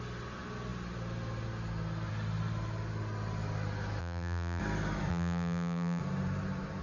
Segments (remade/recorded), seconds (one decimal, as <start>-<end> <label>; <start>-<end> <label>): 0.0-4.0 recorded; 4.0-4.6 remade; 4.6-5.1 recorded; 5.1-6.0 remade; 6.0-6.8 recorded